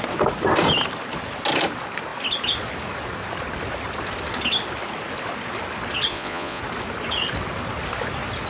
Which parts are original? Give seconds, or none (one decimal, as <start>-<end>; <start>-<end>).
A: 0.0-6.1; 6.6-8.5